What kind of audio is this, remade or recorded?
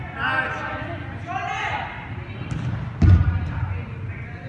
recorded